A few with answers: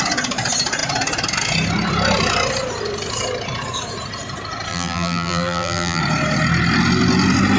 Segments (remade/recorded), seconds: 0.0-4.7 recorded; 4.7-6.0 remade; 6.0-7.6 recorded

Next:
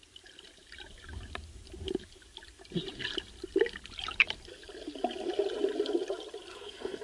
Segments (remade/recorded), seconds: 0.0-6.5 recorded; 6.5-7.0 remade

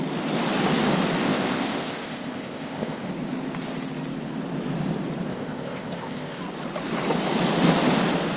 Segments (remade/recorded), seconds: 0.0-1.2 recorded; 1.2-3.1 remade; 3.1-5.3 recorded; 5.3-6.4 remade; 6.4-8.4 recorded

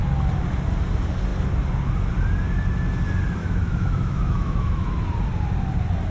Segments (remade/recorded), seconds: 0.0-3.4 recorded; 3.4-5.0 remade; 5.0-6.1 recorded

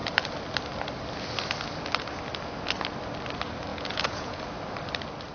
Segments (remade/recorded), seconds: 0.0-3.7 recorded; 3.7-4.4 remade; 4.4-5.3 recorded